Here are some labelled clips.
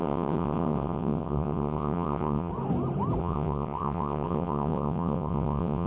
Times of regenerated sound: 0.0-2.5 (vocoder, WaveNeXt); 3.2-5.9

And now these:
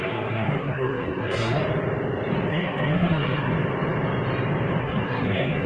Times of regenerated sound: 0.0-1.6 (codec, SNAC); 2.5-3.5; 4.8-5.7

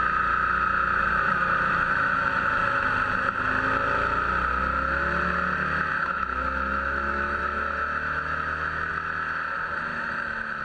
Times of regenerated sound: 1.1-2.9 (autoencoder, DAC-VAE); 5.9-8.9; 9.9-10.6

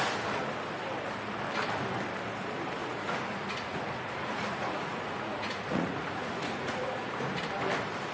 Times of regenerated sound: 2.8-7.4 (vocoder, Vocos)

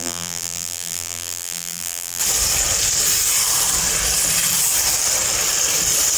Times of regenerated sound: 0.0-2.2 (vocoder, BigVGAN v2)

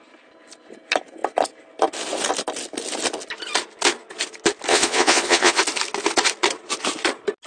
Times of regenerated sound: 4.7-5.6 (vocoder, Vocos)

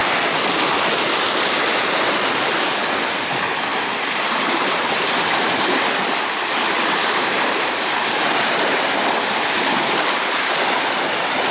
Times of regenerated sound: 3.7-4.8 (vocoder, BigVGAN v2); 7.0-9.0

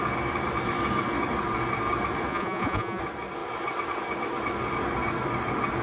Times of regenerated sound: 2.3-3.0 (vocoder, Vocos)